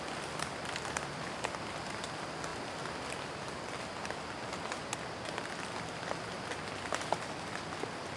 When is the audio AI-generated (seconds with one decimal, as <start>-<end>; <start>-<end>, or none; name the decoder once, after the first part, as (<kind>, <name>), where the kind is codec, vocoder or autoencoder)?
none